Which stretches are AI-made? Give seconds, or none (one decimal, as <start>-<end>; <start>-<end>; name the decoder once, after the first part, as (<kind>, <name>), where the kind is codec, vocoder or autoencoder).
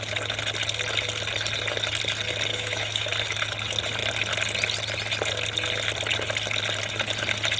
2.5-3.1 (autoencoder, DAC-VAE)